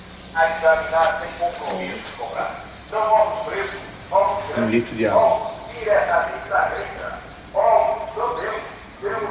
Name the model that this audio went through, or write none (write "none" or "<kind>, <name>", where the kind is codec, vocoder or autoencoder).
none